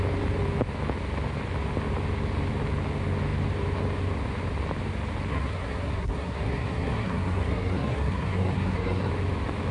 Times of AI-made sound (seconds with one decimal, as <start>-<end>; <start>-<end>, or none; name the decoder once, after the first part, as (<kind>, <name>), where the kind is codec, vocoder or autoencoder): 5.3-9.1 (codec, SNAC)